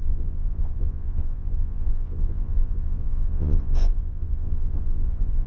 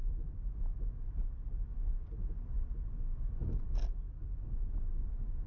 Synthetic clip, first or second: first